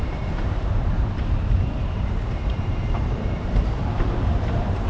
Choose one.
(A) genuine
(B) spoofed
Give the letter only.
B